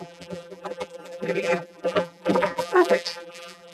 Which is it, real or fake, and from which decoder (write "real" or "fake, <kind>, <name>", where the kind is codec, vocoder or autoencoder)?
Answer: fake, vocoder, BigVGAN v2